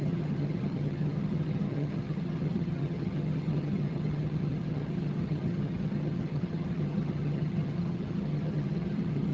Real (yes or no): no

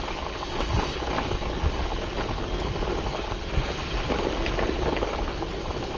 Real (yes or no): yes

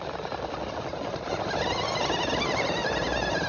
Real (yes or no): yes